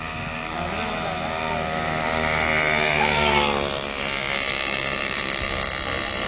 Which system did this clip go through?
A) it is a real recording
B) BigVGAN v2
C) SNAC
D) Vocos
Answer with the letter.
A